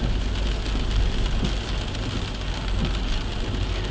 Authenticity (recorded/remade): recorded